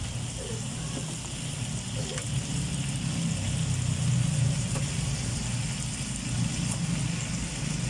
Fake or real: real